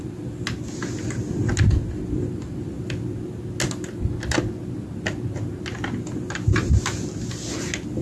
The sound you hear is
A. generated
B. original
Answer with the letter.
B